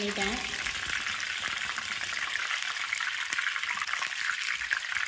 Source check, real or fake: real